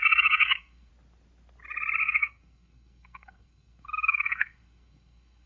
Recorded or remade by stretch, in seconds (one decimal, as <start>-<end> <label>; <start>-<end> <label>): 0.0-0.9 remade; 0.9-2.0 recorded; 2.0-5.5 remade